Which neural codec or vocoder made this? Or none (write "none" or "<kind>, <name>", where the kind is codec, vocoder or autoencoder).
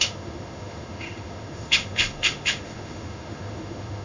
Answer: autoencoder, DAC-VAE